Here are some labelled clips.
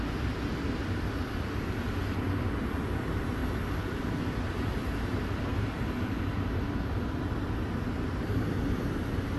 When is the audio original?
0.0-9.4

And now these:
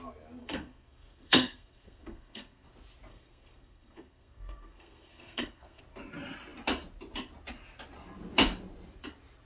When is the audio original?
0.0-0.4; 2.7-3.1; 5.8-9.5

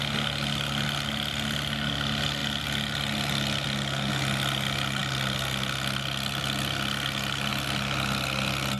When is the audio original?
0.0-8.8

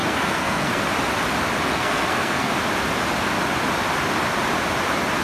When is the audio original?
0.8-1.7; 2.5-5.2

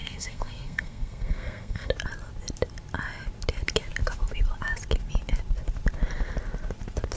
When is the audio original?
1.9-7.2

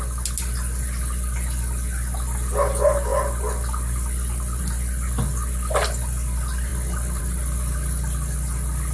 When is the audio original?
0.0-8.9

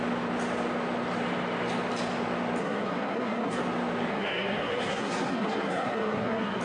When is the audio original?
0.0-2.6; 3.6-4.1